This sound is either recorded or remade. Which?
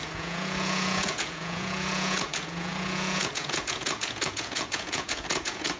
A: remade